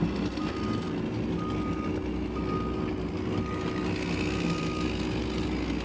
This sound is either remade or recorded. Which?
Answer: recorded